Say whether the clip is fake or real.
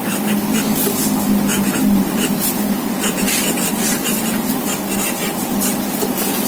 real